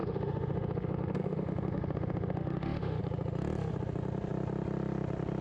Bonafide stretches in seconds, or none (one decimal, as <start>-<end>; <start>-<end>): 3.0-5.4